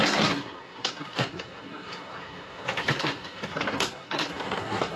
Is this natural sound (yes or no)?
no